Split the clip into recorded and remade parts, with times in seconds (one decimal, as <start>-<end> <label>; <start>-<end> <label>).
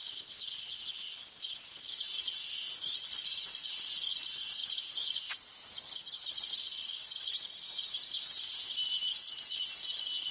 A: 0.0-10.3 recorded